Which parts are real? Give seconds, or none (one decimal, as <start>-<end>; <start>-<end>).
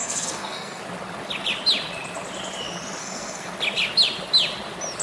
0.8-3.0; 3.5-5.0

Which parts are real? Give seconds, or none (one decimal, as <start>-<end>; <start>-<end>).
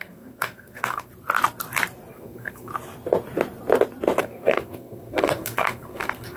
1.1-2.1; 2.7-4.2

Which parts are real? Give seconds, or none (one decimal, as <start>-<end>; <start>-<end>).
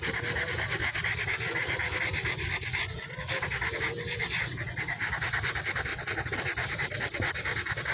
0.0-7.9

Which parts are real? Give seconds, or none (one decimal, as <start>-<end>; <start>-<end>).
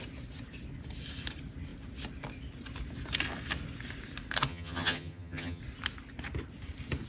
0.0-4.5; 5.6-7.1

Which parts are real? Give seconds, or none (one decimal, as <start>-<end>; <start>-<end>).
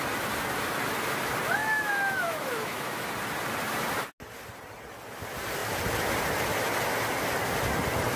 0.0-1.6; 3.1-8.2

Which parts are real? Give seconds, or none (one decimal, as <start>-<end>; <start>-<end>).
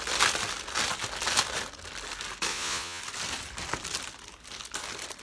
0.0-2.5; 3.0-5.2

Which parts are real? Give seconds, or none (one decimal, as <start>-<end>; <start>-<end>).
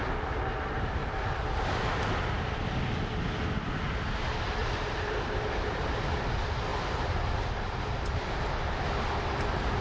0.0-1.0; 1.8-4.6; 6.2-6.7; 8.6-9.8